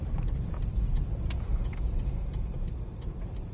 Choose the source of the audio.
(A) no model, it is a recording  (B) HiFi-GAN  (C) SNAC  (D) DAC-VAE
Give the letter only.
A